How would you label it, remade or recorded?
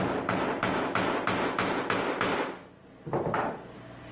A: recorded